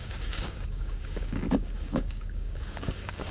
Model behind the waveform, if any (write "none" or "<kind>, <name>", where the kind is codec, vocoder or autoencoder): codec, DAC